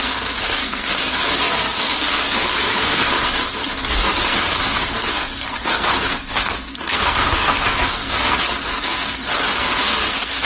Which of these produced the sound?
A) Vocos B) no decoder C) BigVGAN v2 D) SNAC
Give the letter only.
D